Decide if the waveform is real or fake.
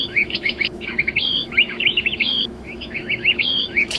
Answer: fake